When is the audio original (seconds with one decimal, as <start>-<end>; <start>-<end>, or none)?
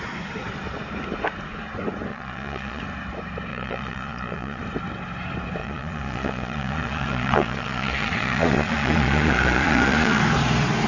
0.0-2.1; 2.8-3.5; 4.6-5.6; 10.2-10.9